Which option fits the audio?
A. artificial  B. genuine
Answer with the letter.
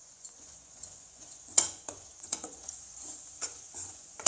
A